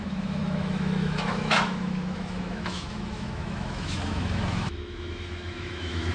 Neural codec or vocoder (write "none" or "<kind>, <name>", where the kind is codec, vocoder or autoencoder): autoencoder, DAC-VAE